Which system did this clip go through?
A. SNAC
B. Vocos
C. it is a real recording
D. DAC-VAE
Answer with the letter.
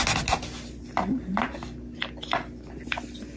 C